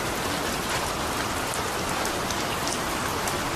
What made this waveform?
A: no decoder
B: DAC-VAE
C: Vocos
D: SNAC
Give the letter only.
A